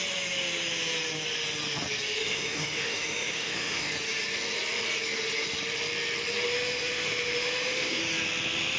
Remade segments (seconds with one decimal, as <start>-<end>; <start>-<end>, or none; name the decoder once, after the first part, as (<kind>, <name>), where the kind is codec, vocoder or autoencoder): 2.2-3.9 (autoencoder, DAC-VAE); 6.5-8.0